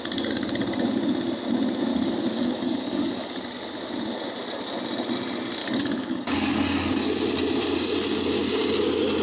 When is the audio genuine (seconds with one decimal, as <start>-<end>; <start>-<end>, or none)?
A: 0.0-1.9; 3.4-5.6; 7.1-9.2